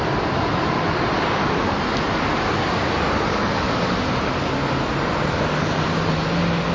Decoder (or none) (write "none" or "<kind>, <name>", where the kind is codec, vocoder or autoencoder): none